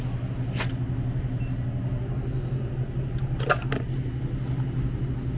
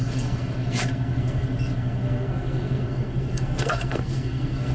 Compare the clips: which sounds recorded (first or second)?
first